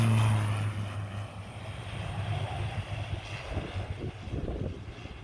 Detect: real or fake real